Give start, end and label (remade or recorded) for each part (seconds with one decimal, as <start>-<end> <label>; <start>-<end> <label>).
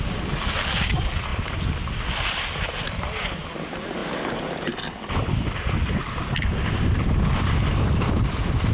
0.0-8.7 recorded